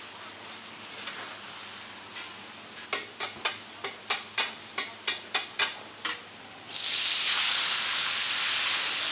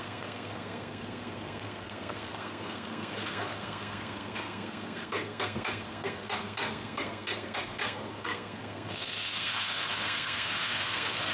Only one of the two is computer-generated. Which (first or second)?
second